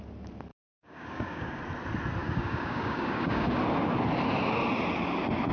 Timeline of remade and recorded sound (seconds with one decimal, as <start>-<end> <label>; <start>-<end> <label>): 0.0-0.5 recorded; 0.5-1.6 remade; 1.6-2.2 recorded; 2.2-3.6 remade; 3.6-5.5 recorded